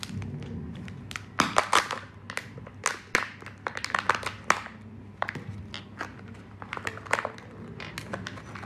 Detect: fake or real real